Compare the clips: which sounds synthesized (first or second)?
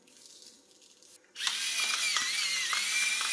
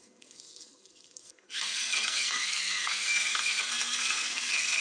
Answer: second